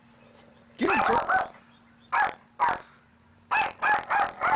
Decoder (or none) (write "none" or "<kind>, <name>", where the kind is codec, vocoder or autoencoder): none